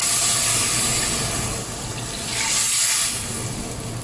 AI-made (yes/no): no